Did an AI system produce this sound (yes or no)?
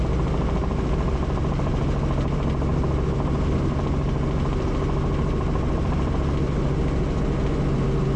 no